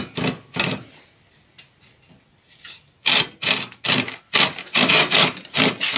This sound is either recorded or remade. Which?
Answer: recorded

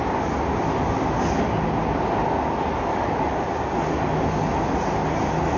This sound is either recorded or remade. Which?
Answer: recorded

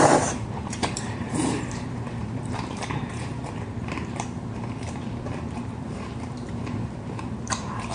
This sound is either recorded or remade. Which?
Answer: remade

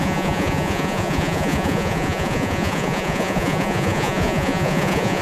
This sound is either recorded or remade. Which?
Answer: remade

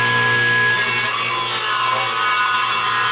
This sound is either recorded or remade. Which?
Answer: recorded